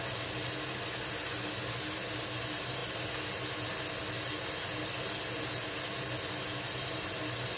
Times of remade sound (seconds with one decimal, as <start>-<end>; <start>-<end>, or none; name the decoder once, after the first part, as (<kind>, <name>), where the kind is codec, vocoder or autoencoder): none